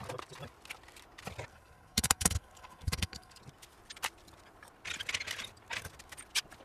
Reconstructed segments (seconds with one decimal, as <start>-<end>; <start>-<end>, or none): 1.5-3.4